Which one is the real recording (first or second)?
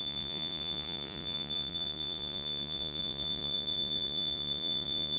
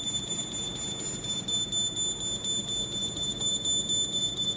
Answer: second